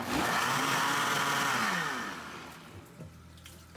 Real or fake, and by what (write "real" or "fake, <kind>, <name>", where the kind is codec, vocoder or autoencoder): real